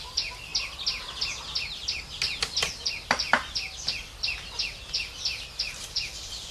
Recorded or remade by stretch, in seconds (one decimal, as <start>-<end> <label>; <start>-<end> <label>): 0.0-0.5 remade; 0.5-2.7 recorded; 2.7-6.5 remade